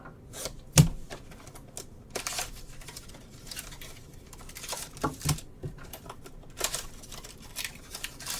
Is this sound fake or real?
real